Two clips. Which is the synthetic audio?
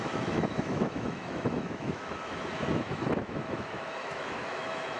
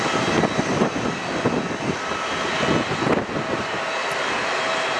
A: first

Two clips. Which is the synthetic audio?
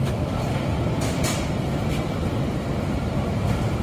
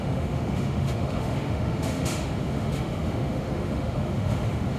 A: second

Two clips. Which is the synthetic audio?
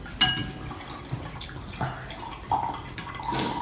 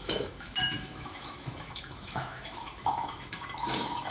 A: second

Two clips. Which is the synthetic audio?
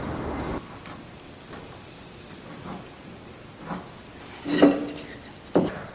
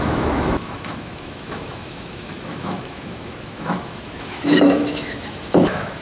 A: second